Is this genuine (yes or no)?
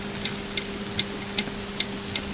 yes